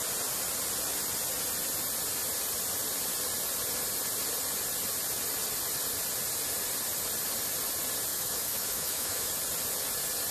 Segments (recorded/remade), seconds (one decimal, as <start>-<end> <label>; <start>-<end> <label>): 0.0-8.1 recorded; 8.1-9.3 remade; 9.3-10.3 recorded